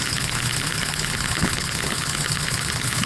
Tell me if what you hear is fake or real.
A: fake